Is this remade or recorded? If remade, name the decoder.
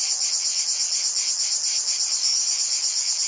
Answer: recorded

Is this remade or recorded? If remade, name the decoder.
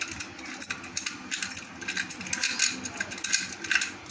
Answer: recorded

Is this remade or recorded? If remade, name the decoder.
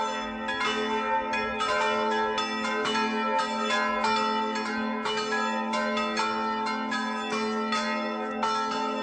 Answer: recorded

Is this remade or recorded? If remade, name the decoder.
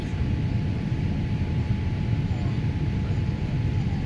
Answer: recorded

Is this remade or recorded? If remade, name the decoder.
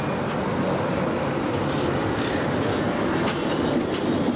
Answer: recorded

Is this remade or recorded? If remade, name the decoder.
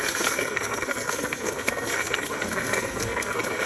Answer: remade, codec, SNAC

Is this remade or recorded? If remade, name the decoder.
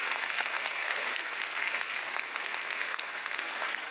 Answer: remade, codec, SNAC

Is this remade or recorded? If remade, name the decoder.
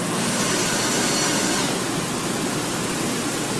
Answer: recorded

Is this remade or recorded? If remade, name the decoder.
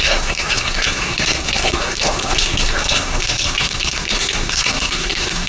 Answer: remade, codec, SNAC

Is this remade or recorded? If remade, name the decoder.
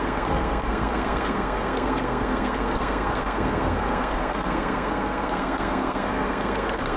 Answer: remade, codec, SNAC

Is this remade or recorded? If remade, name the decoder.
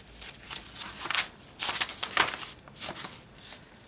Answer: recorded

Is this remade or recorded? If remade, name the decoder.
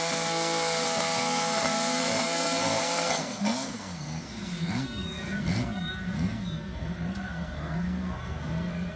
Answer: remade, codec, SNAC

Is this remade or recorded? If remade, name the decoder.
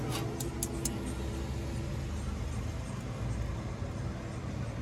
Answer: recorded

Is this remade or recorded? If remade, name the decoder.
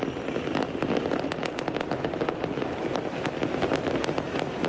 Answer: recorded